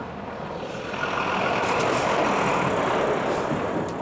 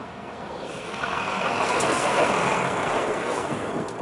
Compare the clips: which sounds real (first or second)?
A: first